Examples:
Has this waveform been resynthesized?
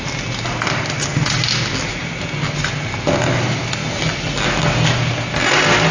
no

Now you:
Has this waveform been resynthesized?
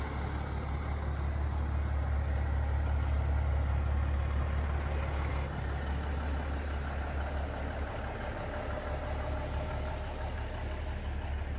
no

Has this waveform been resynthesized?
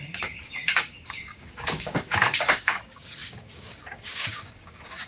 yes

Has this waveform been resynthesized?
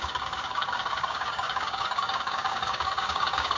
yes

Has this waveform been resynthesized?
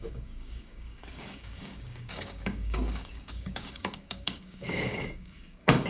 yes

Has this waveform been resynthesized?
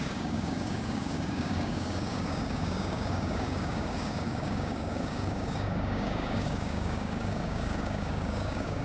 yes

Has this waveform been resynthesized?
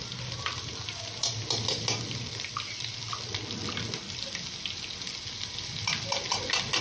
no